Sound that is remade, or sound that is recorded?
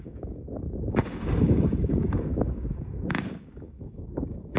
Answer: remade